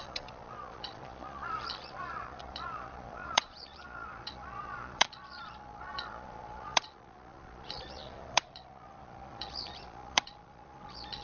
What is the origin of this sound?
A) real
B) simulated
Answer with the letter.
B